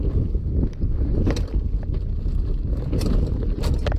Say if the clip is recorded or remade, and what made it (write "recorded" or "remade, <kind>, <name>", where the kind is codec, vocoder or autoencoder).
recorded